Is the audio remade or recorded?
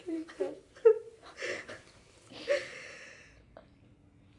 remade